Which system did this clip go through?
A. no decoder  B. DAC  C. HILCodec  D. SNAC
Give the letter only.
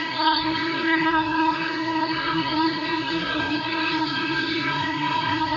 D